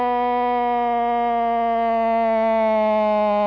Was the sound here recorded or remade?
recorded